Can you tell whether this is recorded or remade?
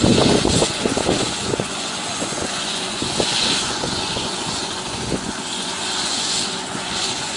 remade